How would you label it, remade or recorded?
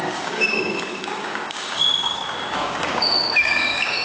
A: remade